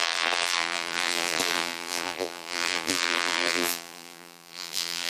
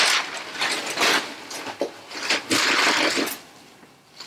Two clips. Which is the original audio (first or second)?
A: second